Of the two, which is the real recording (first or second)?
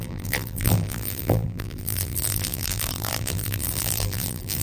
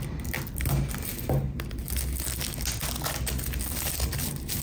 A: second